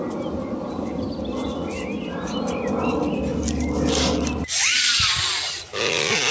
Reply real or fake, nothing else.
real